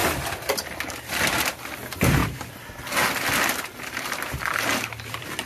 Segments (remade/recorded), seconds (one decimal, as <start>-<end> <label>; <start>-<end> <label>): 0.0-2.2 remade; 2.2-5.1 recorded; 5.1-5.5 remade